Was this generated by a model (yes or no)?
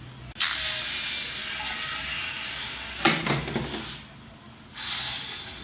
no